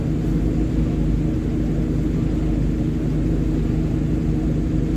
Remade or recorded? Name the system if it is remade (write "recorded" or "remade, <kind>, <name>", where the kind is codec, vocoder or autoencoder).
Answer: recorded